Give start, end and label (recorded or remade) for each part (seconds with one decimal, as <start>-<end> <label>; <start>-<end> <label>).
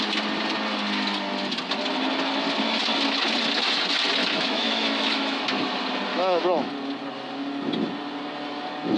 0.0-4.2 recorded; 4.2-5.4 remade; 5.4-6.1 recorded; 6.1-6.7 remade; 6.7-9.0 recorded